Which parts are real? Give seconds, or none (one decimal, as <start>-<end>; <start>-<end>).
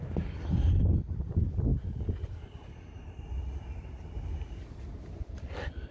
0.0-5.9